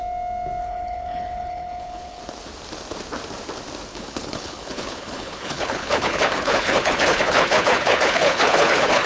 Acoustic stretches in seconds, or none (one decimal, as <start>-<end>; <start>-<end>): 0.0-0.6; 2.2-3.9